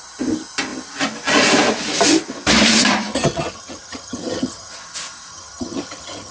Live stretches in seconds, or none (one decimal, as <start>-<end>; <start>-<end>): 0.0-3.1; 4.7-5.3